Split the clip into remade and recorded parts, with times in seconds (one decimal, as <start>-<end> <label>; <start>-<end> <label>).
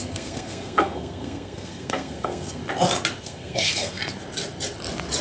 0.0-2.6 remade; 2.6-3.2 recorded; 3.2-4.0 remade; 4.0-5.2 recorded